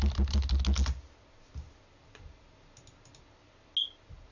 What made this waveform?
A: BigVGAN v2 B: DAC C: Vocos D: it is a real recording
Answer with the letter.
D